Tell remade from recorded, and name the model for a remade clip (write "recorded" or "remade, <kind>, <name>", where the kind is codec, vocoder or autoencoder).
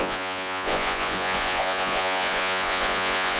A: remade, vocoder, Vocos